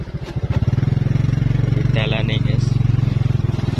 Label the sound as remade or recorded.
remade